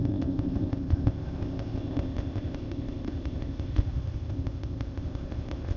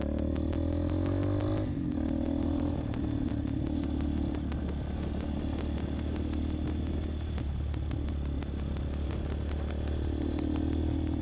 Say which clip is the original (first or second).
second